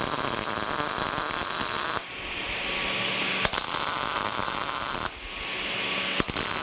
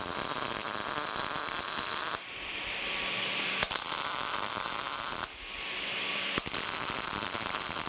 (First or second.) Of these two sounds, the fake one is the second